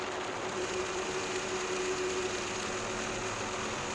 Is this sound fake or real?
real